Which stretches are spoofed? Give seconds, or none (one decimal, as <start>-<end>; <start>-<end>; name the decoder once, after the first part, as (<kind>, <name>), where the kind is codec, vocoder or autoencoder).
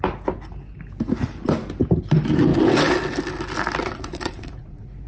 3.8-5.1 (vocoder, Vocos)